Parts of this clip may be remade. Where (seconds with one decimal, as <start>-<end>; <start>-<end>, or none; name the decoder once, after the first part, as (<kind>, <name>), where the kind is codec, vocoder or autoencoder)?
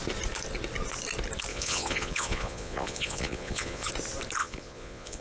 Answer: 1.5-3.9 (vocoder, Vocos); 4.4-5.2